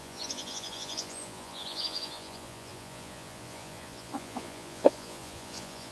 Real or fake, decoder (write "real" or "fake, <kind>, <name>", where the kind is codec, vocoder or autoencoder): fake, vocoder, Vocos